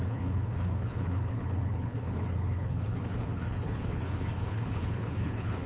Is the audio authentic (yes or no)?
no